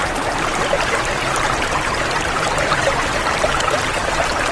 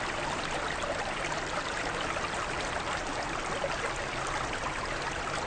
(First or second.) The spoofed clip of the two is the first